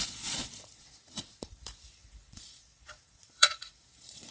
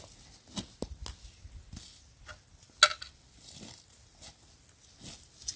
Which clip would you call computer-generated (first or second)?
first